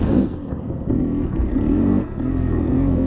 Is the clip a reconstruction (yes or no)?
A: yes